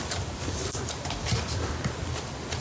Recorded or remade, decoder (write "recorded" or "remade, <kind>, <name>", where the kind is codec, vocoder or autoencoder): remade, vocoder, BigVGAN v2